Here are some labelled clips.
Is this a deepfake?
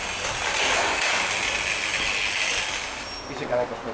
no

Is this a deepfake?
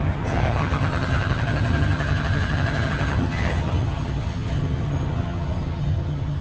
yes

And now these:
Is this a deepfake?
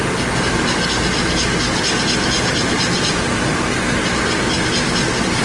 no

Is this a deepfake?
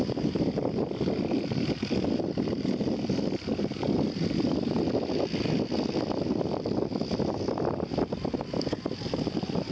no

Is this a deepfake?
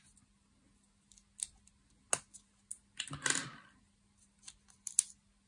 no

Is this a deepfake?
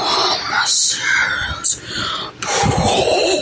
no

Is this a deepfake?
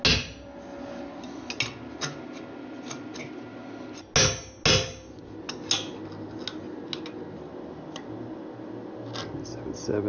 no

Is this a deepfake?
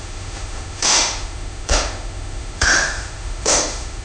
yes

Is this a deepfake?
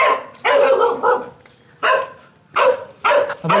no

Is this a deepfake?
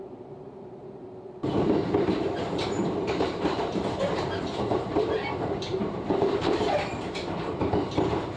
yes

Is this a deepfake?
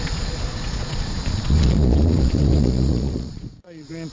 yes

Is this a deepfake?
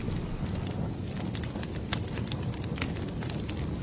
no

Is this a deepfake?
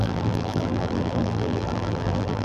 yes